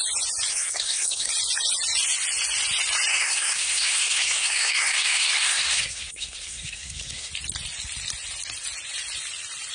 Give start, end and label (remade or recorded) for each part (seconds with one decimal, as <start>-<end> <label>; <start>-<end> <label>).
0.0-0.5 recorded; 0.5-1.3 remade; 1.3-3.1 recorded; 3.1-7.3 remade; 7.3-9.7 recorded